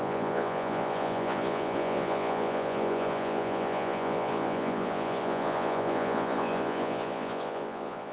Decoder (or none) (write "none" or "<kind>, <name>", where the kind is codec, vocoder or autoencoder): vocoder, Vocos